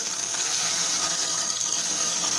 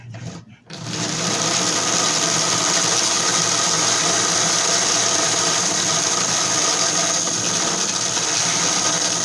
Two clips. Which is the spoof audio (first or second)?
first